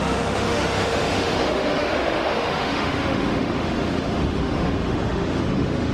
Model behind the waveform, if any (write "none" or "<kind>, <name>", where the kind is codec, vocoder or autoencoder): autoencoder, DAC-VAE